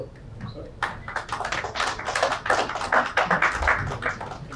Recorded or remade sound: recorded